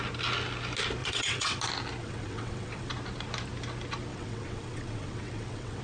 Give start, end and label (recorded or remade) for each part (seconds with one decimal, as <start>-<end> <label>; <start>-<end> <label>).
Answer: 0.0-1.0 recorded; 1.0-1.6 remade; 1.6-2.0 recorded; 2.0-2.9 remade; 2.9-4.1 recorded; 4.1-5.8 remade